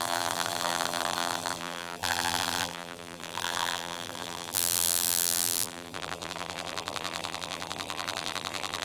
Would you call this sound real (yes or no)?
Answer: no